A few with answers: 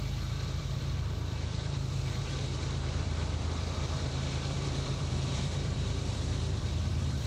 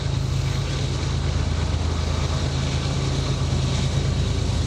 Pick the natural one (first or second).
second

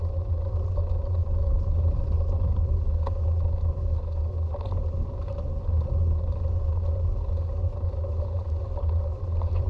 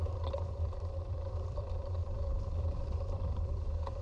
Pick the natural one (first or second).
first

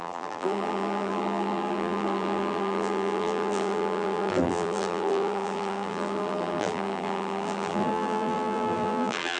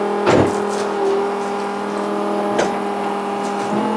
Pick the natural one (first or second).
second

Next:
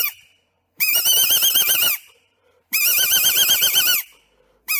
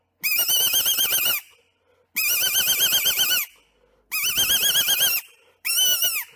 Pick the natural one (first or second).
second